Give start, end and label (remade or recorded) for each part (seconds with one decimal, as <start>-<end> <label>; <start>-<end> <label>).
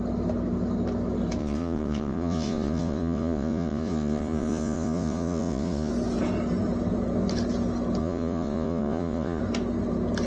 0.0-1.4 recorded; 1.4-5.9 remade; 5.9-8.0 recorded; 8.0-9.4 remade; 9.4-10.3 recorded